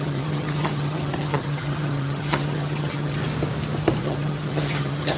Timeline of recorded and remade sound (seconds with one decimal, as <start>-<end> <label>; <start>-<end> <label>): 0.0-3.2 remade; 3.2-4.0 recorded; 4.0-5.2 remade